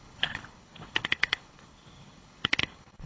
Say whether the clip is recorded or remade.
remade